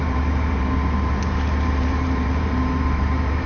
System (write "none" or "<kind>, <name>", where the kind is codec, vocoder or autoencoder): vocoder, BigVGAN v2